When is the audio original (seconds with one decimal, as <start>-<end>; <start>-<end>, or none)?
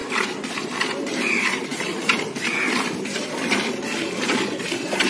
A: 0.0-0.5